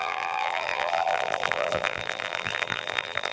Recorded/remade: remade